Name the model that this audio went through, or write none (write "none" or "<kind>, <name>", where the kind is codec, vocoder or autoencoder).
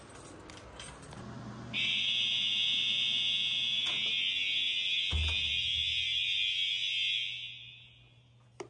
none